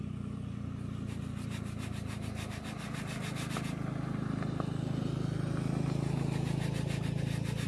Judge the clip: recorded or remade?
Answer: recorded